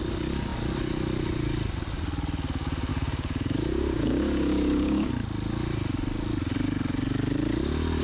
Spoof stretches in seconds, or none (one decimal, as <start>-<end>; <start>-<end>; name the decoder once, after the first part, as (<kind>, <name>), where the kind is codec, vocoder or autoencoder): 2.9-5.1 (codec, DAC)